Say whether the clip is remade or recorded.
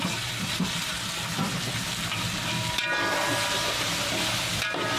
recorded